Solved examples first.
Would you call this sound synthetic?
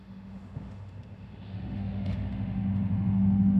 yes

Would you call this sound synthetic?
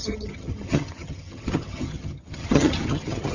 yes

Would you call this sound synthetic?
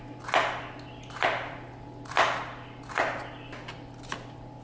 no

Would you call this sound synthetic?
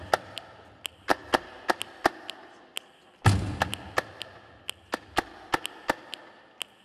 no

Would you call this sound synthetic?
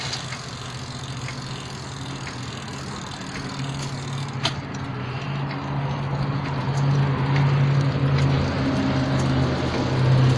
no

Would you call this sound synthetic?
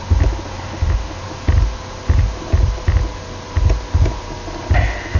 no